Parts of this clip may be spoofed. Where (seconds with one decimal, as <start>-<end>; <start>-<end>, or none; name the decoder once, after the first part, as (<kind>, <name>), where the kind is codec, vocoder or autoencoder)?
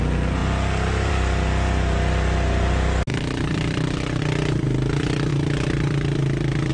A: 3.1-4.2 (vocoder, BigVGAN v2)